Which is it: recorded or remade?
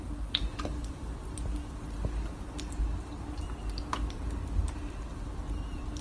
recorded